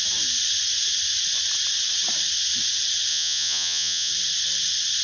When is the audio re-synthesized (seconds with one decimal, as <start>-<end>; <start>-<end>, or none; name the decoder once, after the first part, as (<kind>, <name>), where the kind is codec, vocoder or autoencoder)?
3.1-4.1 (vocoder, Vocos)

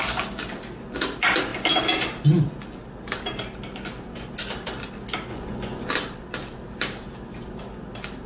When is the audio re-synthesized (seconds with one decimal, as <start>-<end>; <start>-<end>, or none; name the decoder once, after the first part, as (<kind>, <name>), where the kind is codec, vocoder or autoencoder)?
5.3-5.9 (vocoder, Vocos)

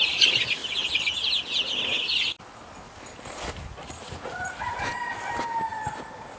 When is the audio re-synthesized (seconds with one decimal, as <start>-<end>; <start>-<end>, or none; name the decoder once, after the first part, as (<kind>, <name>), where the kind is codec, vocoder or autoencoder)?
4.0-4.8 (vocoder, Vocos)

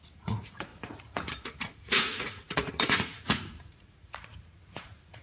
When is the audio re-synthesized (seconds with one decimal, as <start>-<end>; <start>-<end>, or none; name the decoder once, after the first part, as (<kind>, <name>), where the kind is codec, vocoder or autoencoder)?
0.0-5.2 (vocoder, Vocos)

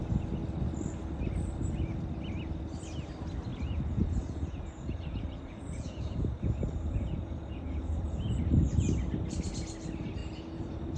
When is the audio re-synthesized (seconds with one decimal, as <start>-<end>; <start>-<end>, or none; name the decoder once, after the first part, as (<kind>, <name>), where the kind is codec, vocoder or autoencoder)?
3.5-8.4 (vocoder, Vocos); 10.2-11.0

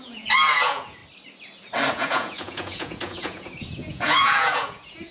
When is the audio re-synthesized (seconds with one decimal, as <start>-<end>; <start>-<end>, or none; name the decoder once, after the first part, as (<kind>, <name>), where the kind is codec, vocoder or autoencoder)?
0.0-1.0 (vocoder, Vocos); 1.9-5.1